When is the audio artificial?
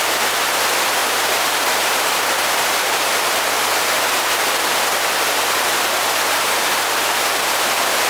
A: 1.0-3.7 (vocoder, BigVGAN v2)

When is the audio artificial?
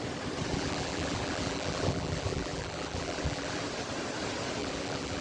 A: 0.5-3.6 (vocoder, BigVGAN v2); 4.6-5.2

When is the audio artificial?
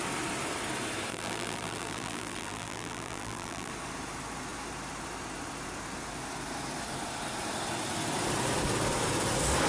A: 1.1-3.7 (vocoder, BigVGAN v2)